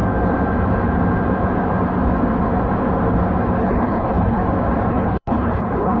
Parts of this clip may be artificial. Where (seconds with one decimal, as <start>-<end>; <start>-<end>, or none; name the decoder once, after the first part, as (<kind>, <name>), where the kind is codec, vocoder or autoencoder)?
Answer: 3.6-4.4 (codec, HILCodec); 4.9-6.0